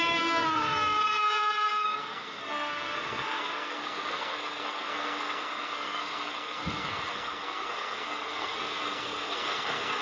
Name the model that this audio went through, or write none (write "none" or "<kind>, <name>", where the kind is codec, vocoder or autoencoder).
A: codec, SNAC